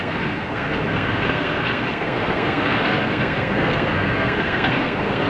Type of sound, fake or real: fake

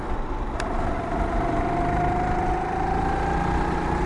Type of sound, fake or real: real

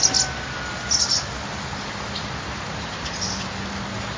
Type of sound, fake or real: real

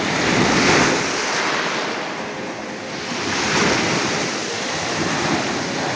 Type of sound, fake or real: real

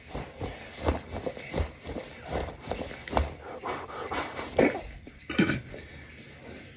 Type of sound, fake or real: real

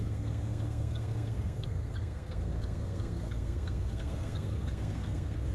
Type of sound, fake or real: fake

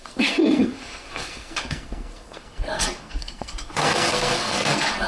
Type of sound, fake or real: fake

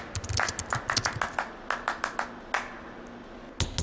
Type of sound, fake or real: real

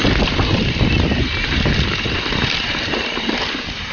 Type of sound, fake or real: real